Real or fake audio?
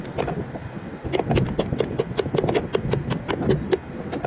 real